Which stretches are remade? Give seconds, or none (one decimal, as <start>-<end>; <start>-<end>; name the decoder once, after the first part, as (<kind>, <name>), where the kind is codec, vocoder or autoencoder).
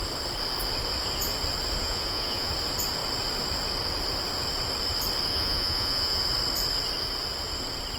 1.8-2.5 (vocoder, Vocos); 5.3-6.2